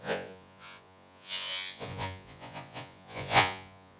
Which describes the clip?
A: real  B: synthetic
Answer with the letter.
B